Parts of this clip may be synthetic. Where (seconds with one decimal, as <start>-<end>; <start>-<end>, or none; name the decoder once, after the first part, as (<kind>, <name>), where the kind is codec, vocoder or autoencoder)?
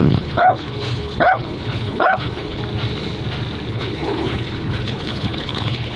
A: 0.0-2.6 (codec, HILCodec); 3.7-6.0